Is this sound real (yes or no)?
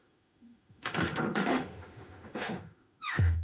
no